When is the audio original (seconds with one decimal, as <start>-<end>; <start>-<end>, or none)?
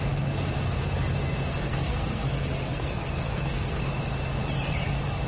0.0-1.5; 3.9-5.3